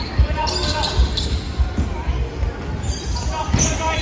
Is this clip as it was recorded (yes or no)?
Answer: yes